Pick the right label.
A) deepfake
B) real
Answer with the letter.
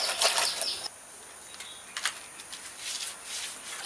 B